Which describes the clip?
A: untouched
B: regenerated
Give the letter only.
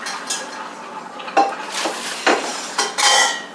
A